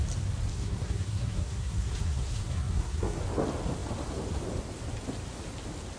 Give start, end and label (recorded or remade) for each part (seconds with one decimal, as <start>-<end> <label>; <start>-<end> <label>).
0.0-0.5 recorded; 0.5-3.2 remade; 3.2-6.0 recorded